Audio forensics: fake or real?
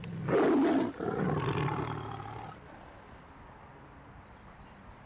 real